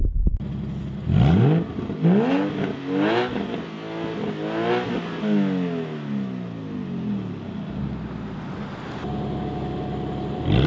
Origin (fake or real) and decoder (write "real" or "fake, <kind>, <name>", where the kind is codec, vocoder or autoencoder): real